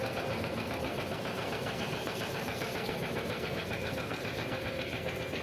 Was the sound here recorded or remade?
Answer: remade